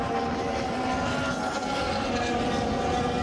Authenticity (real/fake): real